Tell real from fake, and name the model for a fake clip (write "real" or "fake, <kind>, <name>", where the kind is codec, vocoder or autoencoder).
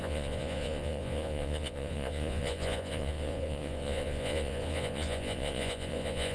fake, vocoder, Vocos